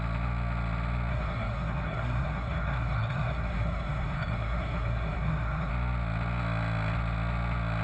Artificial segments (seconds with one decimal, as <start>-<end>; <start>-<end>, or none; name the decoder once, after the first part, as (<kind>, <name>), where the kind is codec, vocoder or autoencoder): 1.1-5.7 (codec, SNAC)